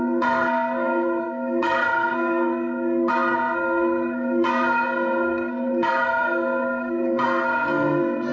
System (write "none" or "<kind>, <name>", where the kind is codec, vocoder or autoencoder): codec, SNAC